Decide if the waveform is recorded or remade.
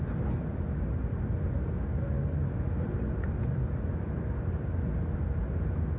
recorded